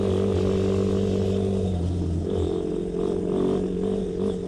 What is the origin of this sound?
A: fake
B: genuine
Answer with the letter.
B